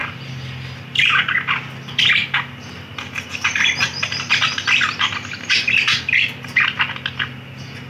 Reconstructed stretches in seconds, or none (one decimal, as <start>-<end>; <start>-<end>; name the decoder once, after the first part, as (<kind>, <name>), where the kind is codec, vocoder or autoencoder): 0.0-1.1 (vocoder, BigVGAN v2); 2.2-6.9